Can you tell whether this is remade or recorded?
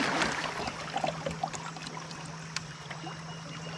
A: recorded